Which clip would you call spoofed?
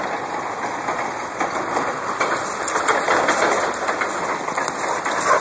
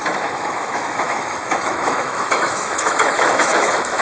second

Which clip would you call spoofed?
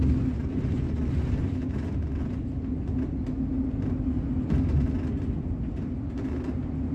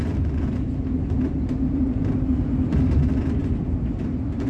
second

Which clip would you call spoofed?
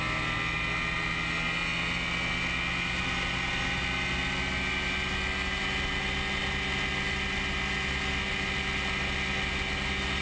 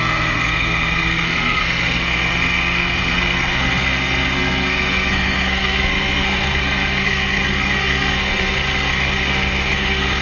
second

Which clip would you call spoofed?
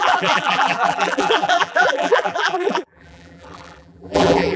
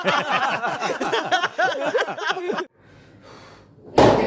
first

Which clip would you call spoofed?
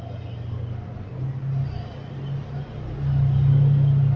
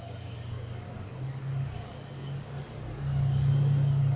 second